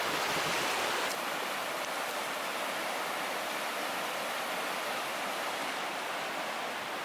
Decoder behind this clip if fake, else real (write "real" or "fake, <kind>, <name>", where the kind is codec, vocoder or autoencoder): real